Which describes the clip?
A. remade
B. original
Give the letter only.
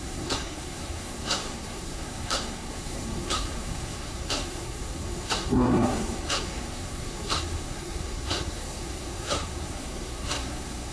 A